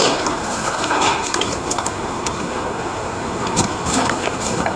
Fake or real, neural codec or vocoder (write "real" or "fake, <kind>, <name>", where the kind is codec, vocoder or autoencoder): fake, codec, SNAC